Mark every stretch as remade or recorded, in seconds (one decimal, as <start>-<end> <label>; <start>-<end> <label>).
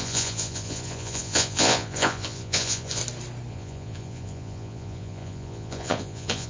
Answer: 0.0-3.0 remade; 3.0-3.5 recorded; 3.5-6.5 remade